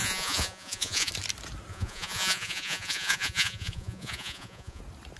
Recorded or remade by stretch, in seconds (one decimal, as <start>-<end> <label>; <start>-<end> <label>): 0.0-1.1 remade; 1.1-1.7 recorded; 1.7-4.8 remade; 4.8-5.2 recorded